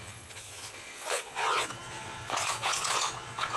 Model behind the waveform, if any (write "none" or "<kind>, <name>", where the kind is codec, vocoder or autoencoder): vocoder, Vocos